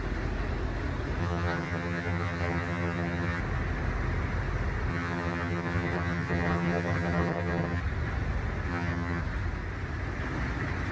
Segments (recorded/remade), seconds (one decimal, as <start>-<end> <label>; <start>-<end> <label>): 0.0-1.2 recorded; 1.2-3.4 remade; 3.4-4.9 recorded; 4.9-7.8 remade; 7.8-8.7 recorded; 8.7-9.2 remade; 9.2-10.9 recorded